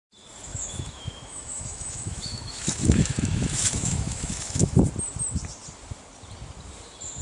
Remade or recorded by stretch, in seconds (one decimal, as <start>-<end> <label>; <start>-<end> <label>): 0.0-0.5 recorded; 0.5-4.8 remade; 4.8-7.2 recorded